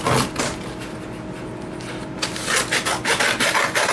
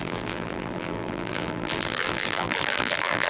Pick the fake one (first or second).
second